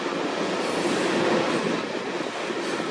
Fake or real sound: real